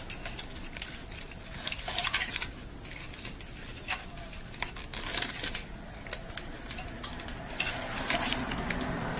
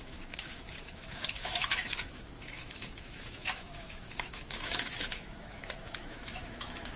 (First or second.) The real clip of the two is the first